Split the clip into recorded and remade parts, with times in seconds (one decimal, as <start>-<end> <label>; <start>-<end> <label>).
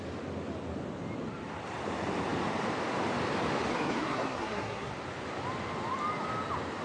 0.0-3.7 recorded; 3.7-4.9 remade; 4.9-6.8 recorded